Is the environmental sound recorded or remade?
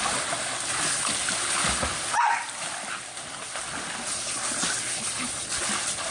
recorded